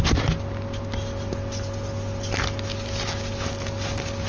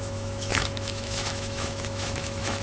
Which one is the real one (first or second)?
first